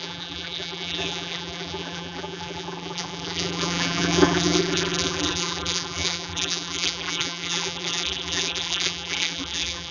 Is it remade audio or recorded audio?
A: remade